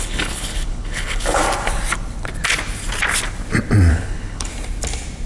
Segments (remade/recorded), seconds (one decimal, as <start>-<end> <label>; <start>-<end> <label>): 0.0-1.4 remade; 1.4-3.9 recorded; 3.9-4.5 remade; 4.5-5.3 recorded